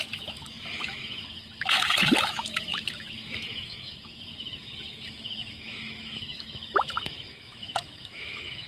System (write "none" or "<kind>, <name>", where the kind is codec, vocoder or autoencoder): autoencoder, DAC-VAE